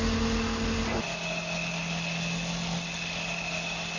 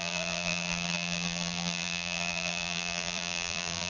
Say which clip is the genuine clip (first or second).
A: first